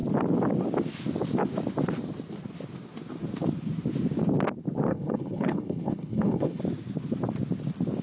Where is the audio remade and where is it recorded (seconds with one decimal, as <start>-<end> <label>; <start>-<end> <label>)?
0.0-4.9 recorded; 4.9-6.6 remade; 6.6-8.0 recorded